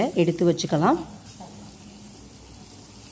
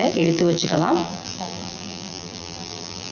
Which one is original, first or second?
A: first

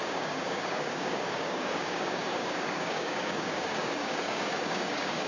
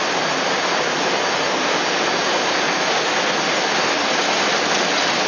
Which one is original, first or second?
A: second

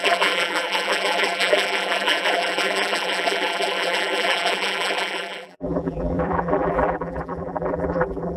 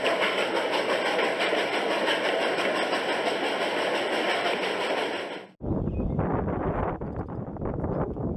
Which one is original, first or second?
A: second